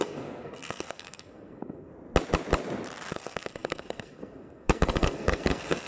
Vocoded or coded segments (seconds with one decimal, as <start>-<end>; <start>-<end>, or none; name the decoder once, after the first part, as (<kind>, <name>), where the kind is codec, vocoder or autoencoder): 0.0-1.9 (codec, SNAC); 3.1-5.9